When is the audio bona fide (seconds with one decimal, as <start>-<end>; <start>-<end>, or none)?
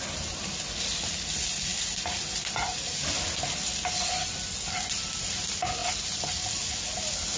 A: 0.0-7.4